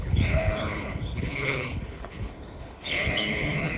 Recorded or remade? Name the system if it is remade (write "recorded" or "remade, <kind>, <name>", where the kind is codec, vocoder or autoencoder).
remade, codec, HILCodec